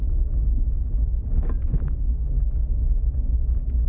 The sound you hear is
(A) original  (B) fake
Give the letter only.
A